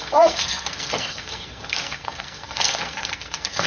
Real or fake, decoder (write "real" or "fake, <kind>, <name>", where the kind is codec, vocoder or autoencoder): fake, codec, SNAC